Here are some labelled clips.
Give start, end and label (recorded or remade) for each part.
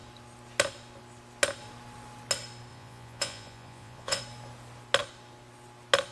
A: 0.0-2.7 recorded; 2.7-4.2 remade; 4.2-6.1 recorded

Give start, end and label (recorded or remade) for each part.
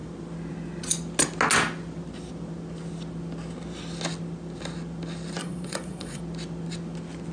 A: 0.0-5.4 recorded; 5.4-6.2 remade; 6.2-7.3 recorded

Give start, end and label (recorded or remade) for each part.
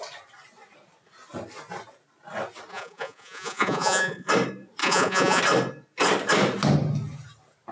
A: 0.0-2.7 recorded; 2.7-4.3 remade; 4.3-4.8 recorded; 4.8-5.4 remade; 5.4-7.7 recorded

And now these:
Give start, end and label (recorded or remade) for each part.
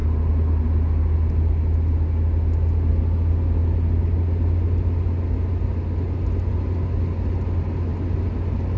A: 0.0-8.8 recorded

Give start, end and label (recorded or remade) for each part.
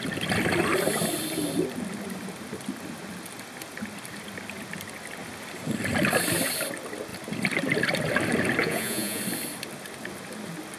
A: 0.0-8.6 recorded; 8.6-9.2 remade; 9.2-10.8 recorded